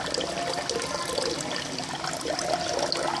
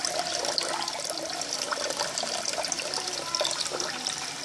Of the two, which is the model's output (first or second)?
second